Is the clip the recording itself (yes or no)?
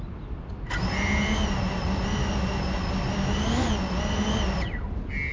yes